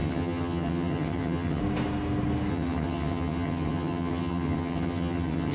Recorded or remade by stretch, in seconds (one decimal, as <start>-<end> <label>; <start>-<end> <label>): 0.0-1.6 remade; 1.6-2.5 recorded; 2.5-5.5 remade